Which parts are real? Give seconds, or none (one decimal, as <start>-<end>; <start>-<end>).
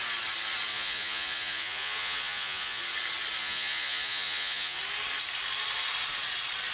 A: 0.0-0.7; 2.8-3.4; 4.8-6.7